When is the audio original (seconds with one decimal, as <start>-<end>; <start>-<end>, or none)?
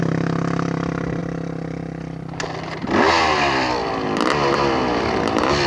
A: 0.0-5.7